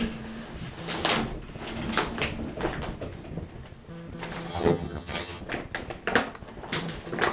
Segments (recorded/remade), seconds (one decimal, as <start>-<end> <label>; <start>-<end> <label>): 0.0-4.5 recorded; 4.5-5.4 remade; 5.4-7.3 recorded